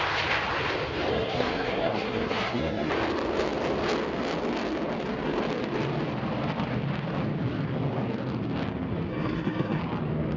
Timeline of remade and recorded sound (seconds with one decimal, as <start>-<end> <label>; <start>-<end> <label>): 0.0-1.1 recorded; 1.1-2.9 remade; 2.9-9.1 recorded; 9.1-9.8 remade; 9.8-10.4 recorded

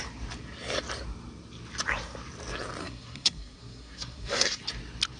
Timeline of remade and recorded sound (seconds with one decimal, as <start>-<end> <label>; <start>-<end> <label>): 0.0-2.8 recorded; 2.8-4.6 remade; 4.6-5.2 recorded

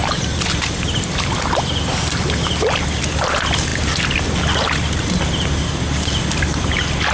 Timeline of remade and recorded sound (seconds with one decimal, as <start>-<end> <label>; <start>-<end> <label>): 0.0-7.1 recorded

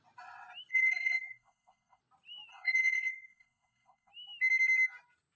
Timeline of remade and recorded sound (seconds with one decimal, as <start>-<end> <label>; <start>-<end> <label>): 0.0-0.7 recorded; 0.7-2.0 remade; 2.0-2.5 recorded; 2.5-4.1 remade; 4.1-5.4 recorded

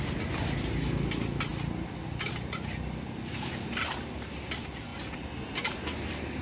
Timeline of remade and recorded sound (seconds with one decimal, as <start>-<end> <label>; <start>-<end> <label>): 0.0-6.4 recorded

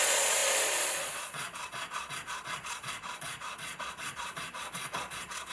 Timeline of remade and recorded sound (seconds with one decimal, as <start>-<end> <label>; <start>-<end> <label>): 0.0-5.5 remade